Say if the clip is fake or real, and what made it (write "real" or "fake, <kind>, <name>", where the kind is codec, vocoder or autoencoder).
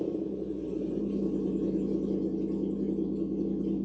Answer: real